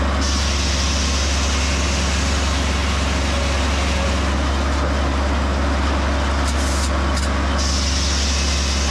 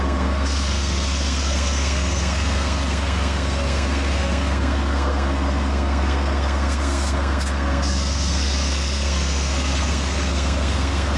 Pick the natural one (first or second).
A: first